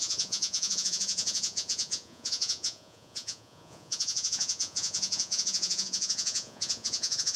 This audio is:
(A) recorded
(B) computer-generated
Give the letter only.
B